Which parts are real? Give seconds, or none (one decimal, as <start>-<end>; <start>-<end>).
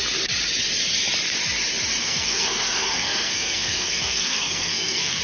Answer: 0.0-2.0